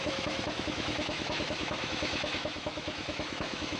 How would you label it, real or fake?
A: fake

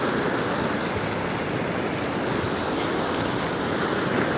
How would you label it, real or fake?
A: real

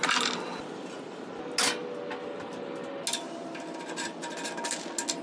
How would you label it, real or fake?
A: real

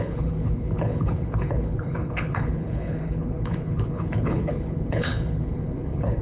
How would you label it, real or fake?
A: fake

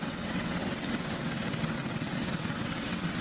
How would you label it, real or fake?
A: fake